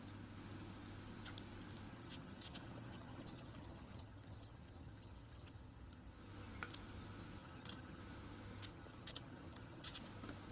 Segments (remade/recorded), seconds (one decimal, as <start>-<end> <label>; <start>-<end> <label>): 0.0-1.9 recorded; 1.9-6.1 remade; 6.1-7.4 recorded; 7.4-8.0 remade; 8.0-8.7 recorded; 8.7-10.0 remade; 10.0-10.5 recorded